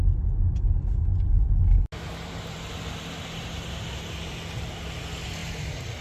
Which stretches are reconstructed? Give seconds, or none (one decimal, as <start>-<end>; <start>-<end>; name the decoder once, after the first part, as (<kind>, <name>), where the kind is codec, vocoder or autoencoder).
none